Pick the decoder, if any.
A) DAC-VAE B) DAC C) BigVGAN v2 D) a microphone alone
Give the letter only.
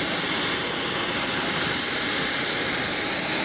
C